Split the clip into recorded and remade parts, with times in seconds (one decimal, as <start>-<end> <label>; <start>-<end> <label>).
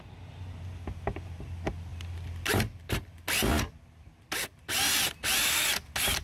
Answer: 0.0-6.2 recorded